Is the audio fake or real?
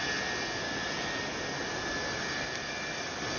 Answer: real